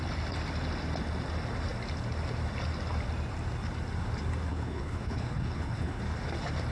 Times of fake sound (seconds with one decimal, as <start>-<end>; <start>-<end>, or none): 4.5-6.0